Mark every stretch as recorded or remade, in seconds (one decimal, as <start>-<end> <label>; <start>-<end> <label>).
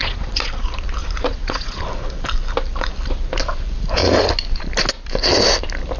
0.0-0.5 remade; 0.5-1.0 recorded; 1.0-1.8 remade; 1.8-6.0 recorded